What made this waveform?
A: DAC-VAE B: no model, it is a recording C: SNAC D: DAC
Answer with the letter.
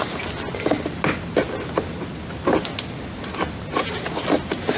B